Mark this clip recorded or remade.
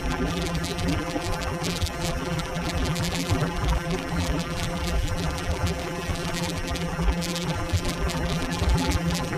remade